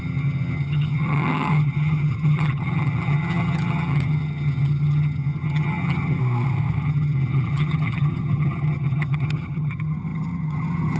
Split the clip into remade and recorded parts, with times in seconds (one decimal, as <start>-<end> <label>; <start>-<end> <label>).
0.0-6.2 remade; 6.2-6.8 recorded; 6.8-11.0 remade